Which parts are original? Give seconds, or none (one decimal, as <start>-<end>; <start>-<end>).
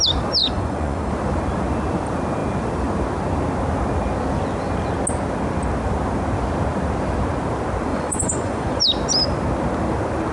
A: 0.0-0.4; 1.1-7.9; 8.8-10.3